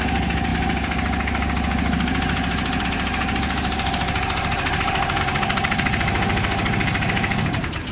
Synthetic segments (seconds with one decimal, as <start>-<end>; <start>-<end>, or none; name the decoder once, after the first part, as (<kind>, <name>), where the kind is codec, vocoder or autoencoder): none